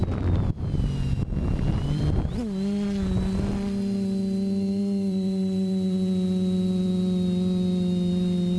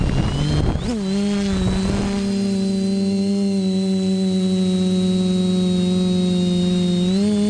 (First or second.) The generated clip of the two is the first